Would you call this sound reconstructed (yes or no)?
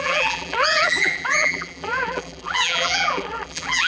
yes